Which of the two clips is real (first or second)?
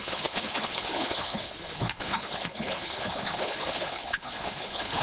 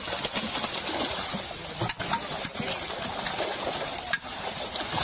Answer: second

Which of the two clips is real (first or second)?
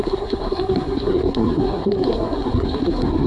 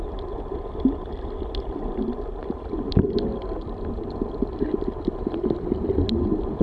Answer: second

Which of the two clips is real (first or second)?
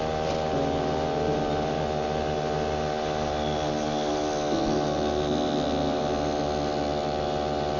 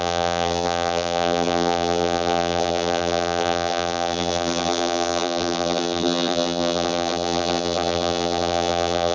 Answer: first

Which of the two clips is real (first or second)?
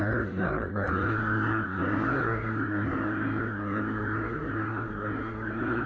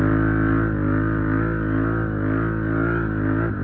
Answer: second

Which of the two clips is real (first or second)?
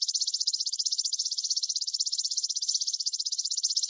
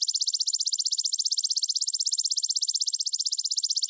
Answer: second